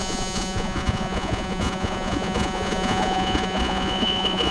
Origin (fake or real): fake